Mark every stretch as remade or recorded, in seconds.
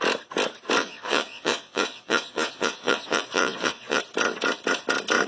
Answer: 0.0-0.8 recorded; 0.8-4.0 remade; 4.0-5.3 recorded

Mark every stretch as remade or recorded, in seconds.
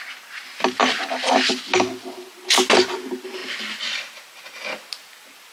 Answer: 0.0-5.5 recorded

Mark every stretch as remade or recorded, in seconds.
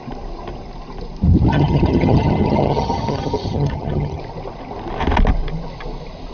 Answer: 0.0-1.5 recorded; 1.5-4.2 remade; 4.2-6.3 recorded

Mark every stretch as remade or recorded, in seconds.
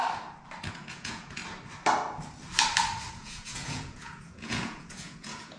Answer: 0.0-0.7 recorded; 0.7-1.4 remade; 1.4-3.1 recorded; 3.1-5.6 remade